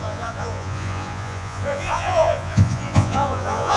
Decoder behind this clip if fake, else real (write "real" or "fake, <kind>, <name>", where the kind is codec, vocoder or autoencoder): fake, vocoder, Vocos